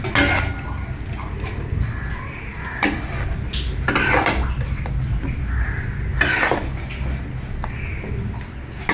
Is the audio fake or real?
real